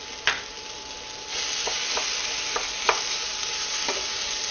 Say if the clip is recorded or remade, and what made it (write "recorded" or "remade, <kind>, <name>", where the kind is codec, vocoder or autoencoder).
recorded